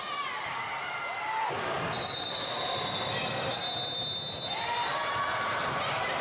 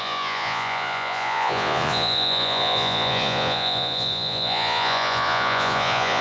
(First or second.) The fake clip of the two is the second